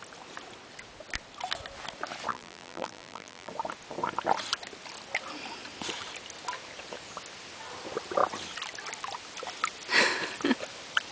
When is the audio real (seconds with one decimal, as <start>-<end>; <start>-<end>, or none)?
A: 0.0-2.3; 3.5-11.1